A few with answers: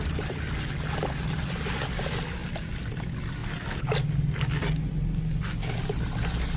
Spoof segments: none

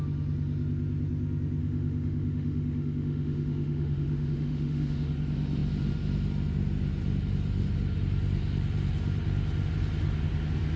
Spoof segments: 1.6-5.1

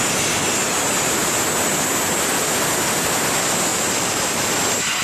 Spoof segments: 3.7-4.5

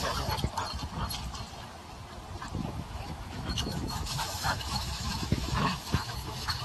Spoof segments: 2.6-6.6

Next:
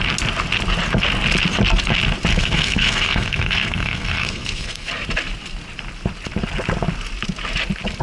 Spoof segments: 2.3-4.9